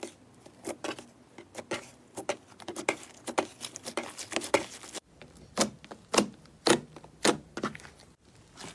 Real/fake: real